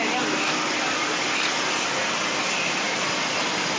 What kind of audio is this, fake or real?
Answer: real